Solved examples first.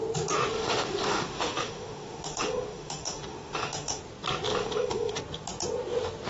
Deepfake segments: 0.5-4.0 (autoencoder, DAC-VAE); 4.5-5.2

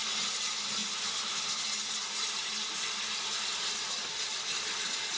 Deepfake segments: none